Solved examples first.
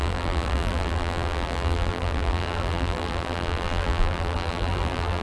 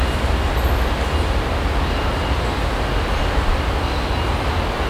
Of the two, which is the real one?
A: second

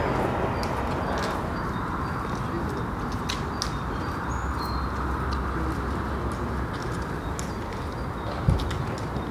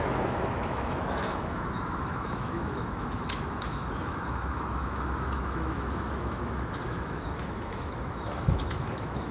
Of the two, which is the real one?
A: first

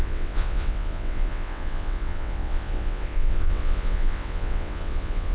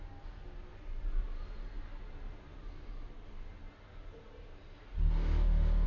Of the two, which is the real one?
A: second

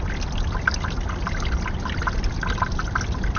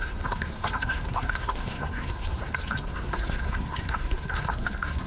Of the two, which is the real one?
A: first